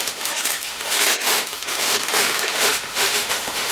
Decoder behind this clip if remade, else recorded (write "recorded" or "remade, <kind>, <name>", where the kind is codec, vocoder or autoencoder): remade, autoencoder, DAC-VAE